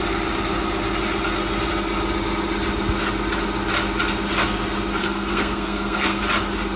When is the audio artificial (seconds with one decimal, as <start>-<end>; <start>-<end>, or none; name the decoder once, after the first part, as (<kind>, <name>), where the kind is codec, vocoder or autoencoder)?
5.0-6.2 (codec, SNAC)